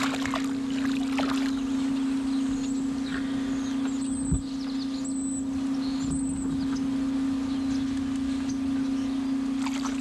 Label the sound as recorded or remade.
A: recorded